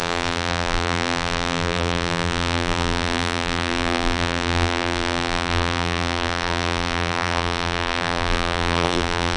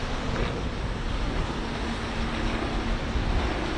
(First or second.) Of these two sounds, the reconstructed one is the first